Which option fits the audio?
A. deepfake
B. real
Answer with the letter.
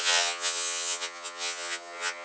A